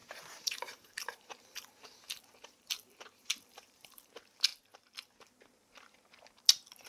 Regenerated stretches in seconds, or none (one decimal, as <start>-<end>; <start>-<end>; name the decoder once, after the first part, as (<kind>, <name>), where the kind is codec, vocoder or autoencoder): 0.0-4.1 (vocoder, BigVGAN v2)